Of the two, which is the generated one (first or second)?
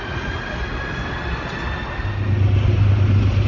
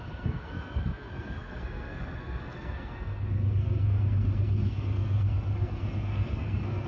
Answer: second